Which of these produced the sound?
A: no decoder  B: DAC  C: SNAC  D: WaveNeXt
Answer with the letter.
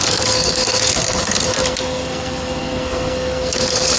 C